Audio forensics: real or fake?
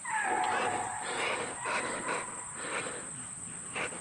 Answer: real